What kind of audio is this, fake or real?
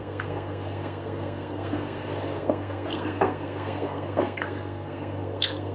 fake